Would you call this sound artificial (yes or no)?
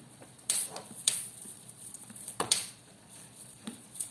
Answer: yes